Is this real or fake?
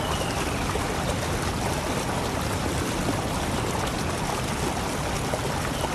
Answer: real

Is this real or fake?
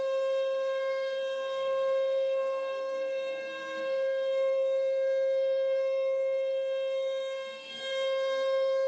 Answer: fake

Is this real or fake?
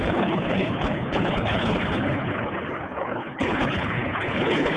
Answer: fake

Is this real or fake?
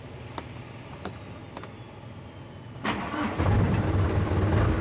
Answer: real